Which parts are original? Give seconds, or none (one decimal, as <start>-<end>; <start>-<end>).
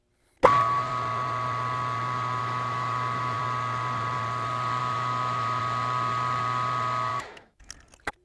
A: 0.0-2.4; 3.4-4.8; 5.6-7.1; 7.7-8.2